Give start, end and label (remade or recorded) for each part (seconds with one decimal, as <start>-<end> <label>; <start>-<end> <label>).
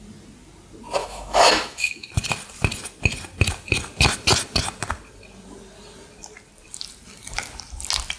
0.0-1.0 recorded; 1.0-2.1 remade; 2.1-8.2 recorded